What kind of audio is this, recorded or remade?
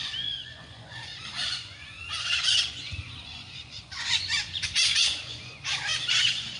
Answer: remade